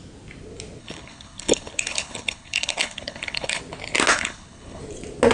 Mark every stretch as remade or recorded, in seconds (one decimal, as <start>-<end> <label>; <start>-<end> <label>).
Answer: 0.0-0.8 recorded; 0.8-3.6 remade; 3.6-4.1 recorded; 4.1-4.8 remade; 4.8-5.3 recorded